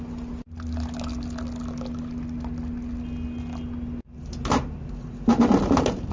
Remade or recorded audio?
recorded